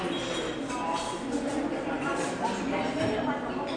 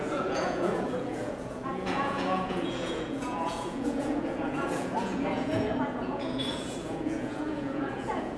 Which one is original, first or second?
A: first